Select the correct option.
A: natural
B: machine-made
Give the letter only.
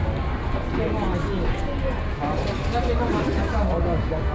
A